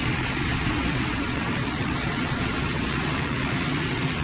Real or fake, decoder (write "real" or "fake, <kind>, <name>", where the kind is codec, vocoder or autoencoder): fake, vocoder, WaveNeXt